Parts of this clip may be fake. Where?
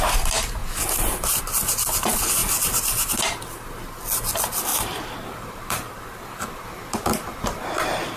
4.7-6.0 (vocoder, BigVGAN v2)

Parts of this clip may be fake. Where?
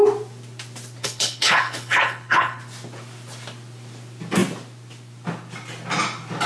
1.0-2.6 (codec, HILCodec)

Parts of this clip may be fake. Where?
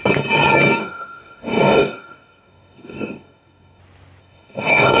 0.8-3.8 (codec, DAC); 4.2-5.0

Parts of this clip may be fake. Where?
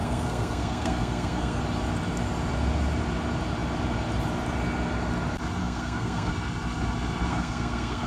0.0-1.6 (codec, SNAC); 5.6-6.3; 7.3-8.1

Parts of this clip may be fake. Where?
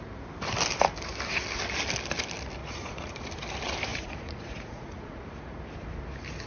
2.6-3.2 (vocoder, Vocos); 3.9-5.6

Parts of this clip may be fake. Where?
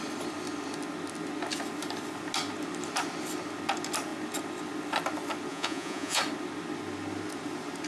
5.5-6.2 (vocoder, Vocos)